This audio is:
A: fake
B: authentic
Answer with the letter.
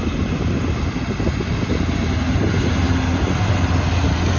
B